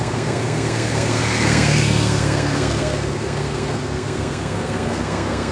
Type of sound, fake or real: fake